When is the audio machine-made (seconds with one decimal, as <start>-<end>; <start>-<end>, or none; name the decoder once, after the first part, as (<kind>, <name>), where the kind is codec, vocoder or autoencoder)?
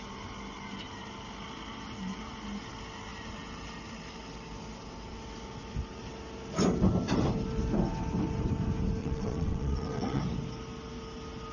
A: 9.0-10.2 (vocoder, WaveNeXt)